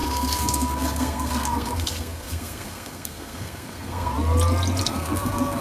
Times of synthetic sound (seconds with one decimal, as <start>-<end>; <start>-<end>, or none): 0.0-4.1; 4.8-5.6